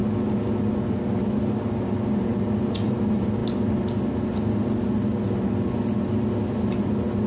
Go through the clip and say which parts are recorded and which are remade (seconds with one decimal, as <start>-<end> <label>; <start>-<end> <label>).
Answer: 0.0-7.3 recorded